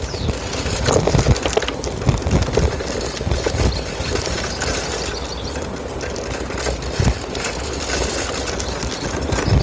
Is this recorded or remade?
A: recorded